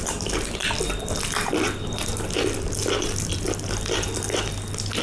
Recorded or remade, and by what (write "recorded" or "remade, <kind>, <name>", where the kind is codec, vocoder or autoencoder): recorded